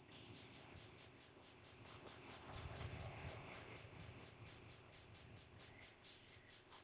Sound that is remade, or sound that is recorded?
remade